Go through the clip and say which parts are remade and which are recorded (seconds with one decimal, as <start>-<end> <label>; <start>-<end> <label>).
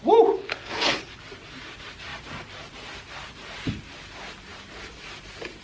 0.0-0.4 recorded; 0.4-1.2 remade; 1.2-5.6 recorded